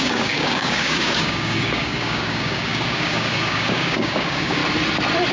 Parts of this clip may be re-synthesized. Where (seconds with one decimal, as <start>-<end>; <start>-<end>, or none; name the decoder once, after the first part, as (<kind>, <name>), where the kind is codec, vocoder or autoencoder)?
0.0-4.6 (codec, DAC)